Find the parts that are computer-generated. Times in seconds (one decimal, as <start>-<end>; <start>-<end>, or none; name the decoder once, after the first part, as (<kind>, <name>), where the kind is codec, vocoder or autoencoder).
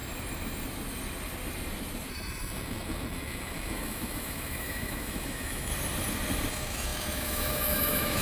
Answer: 2.1-5.7 (autoencoder, DAC-VAE); 6.5-8.2